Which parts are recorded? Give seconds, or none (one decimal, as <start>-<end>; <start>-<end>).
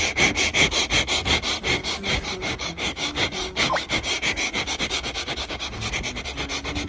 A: 0.0-1.8; 5.9-6.9